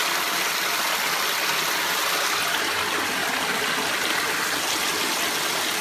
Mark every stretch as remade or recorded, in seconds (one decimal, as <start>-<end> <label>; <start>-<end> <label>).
0.0-5.8 recorded